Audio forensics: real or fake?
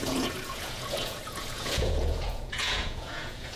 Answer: fake